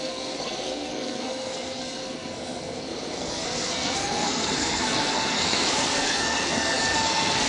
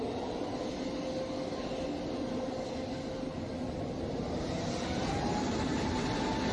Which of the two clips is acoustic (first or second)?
second